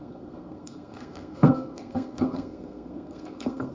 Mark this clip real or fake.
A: fake